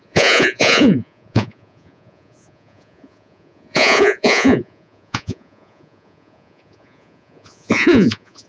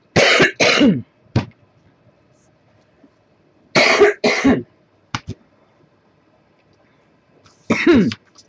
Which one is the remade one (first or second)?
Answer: first